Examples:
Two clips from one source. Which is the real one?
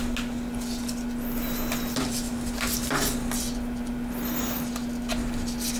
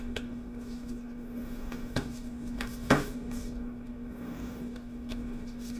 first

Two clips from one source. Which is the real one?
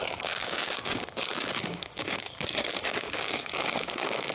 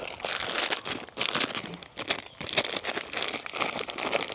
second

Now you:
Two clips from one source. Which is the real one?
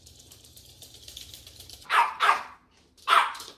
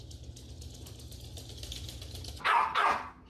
second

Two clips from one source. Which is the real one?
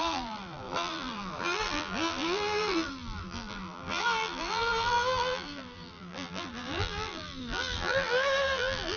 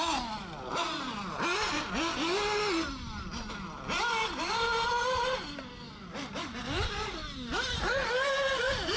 second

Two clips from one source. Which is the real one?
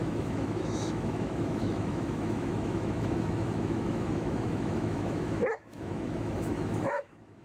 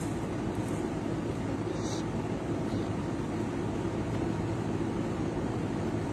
second